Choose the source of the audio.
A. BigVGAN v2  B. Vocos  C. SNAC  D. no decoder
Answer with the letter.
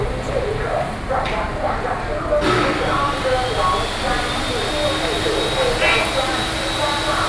D